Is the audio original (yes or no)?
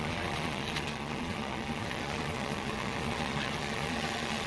no